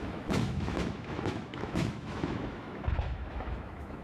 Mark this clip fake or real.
fake